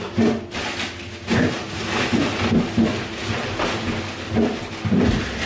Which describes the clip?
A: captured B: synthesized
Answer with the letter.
A